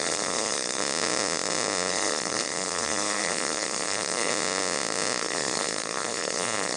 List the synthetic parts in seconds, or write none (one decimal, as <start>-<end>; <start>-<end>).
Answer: 0.0-0.8; 1.9-4.3; 5.2-6.8